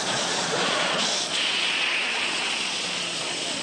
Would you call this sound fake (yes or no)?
yes